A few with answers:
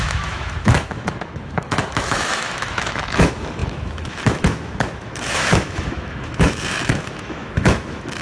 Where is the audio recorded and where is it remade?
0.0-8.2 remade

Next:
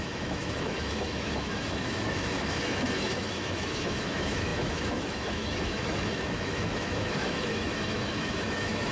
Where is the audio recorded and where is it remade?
0.0-8.9 remade

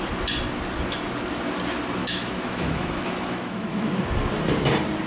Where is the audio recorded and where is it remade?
0.0-2.0 recorded; 2.0-3.9 remade; 3.9-5.1 recorded

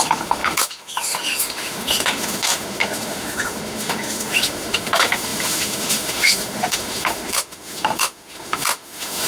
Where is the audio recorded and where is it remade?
0.0-9.3 remade

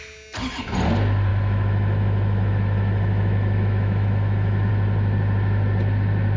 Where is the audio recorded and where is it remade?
0.0-1.3 recorded; 1.3-4.7 remade; 4.7-6.4 recorded

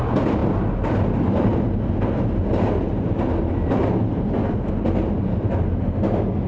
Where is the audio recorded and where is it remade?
0.0-6.5 recorded

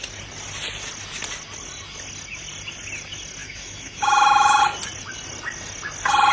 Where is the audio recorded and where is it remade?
0.0-3.4 recorded; 3.4-4.6 remade; 4.6-6.3 recorded

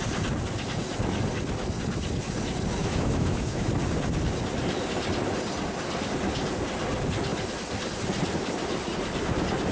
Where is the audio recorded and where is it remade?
0.0-2.8 recorded; 2.8-3.7 remade; 3.7-9.7 recorded